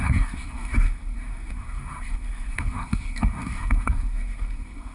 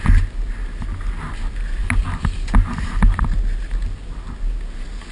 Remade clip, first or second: first